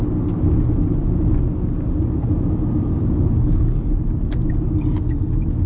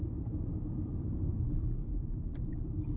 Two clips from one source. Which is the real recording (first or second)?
first